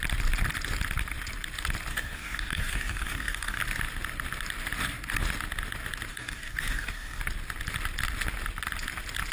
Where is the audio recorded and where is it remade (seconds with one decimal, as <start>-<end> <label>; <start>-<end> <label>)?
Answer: 0.0-1.9 recorded; 1.9-3.6 remade; 3.6-6.1 recorded; 6.1-7.2 remade; 7.2-9.3 recorded